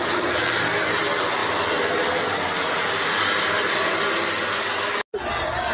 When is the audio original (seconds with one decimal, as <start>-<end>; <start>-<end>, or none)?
0.0-5.7